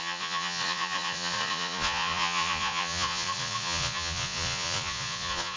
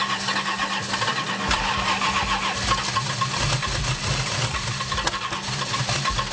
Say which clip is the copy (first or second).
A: first